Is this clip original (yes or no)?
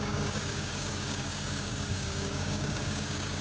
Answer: no